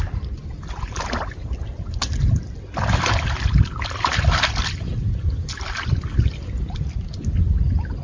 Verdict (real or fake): real